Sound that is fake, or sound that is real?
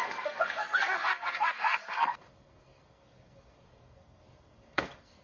fake